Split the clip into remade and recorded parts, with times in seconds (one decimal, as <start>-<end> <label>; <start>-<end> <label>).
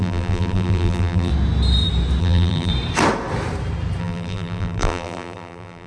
0.0-1.3 remade; 1.3-2.2 recorded; 2.2-2.7 remade; 2.7-4.0 recorded; 4.0-5.9 remade